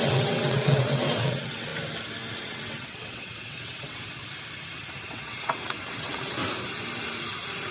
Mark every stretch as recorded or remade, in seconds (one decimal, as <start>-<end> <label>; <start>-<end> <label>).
0.0-1.7 remade; 1.7-2.3 recorded; 2.3-4.2 remade; 4.2-5.0 recorded; 5.0-6.4 remade; 6.4-7.7 recorded